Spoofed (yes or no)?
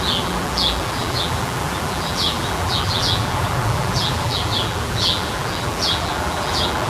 yes